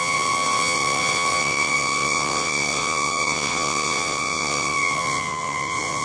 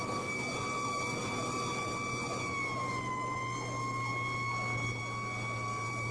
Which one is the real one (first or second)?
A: second